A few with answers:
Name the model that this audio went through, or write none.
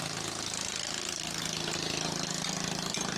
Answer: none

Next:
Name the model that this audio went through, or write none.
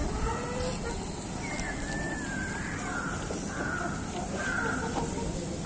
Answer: none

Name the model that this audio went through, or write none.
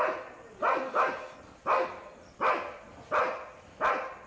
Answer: none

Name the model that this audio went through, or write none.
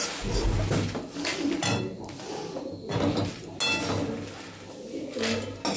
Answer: none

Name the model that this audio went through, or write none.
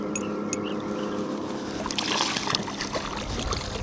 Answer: none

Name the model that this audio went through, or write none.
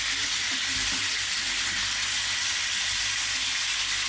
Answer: none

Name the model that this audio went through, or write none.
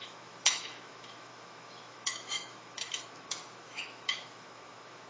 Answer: autoencoder, DAC-VAE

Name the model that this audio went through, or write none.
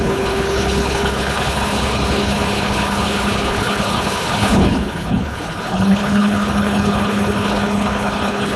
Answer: codec, HILCodec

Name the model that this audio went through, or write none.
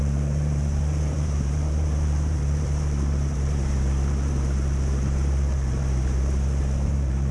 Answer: vocoder, BigVGAN v2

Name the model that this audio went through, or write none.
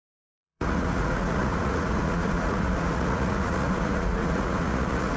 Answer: vocoder, Vocos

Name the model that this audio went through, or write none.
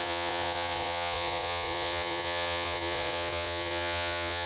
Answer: vocoder, Vocos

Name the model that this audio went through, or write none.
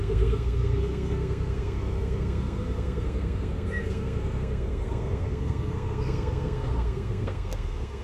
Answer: codec, SNAC